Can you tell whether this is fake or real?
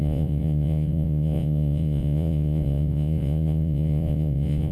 fake